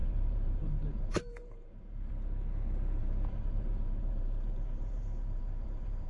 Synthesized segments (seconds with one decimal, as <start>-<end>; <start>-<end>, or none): 0.0-2.1; 3.0-6.1

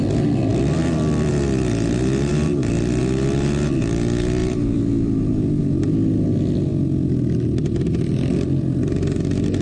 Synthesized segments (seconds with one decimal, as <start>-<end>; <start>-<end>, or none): 0.5-1.3; 2.3-3.0; 4.4-5.8

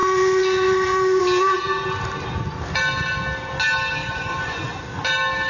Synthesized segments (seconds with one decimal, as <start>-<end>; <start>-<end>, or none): 0.0-1.2; 4.0-4.8